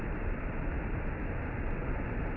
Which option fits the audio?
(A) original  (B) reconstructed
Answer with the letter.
A